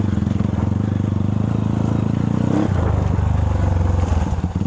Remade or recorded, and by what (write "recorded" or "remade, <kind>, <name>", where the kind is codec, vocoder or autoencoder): recorded